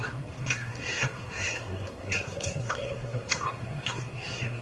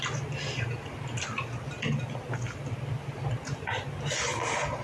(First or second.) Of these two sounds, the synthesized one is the first